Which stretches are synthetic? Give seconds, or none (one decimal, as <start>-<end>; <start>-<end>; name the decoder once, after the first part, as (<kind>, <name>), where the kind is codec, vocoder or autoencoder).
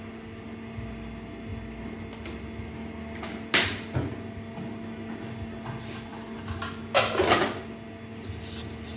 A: none